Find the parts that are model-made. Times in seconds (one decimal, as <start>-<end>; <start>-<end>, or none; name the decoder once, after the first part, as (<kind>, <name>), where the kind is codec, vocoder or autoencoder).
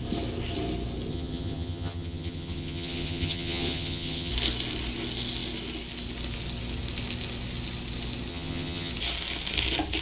1.1-4.3 (vocoder, HiFi-GAN); 8.3-8.9